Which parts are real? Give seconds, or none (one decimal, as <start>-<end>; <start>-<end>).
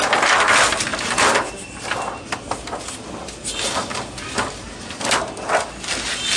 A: 0.0-6.4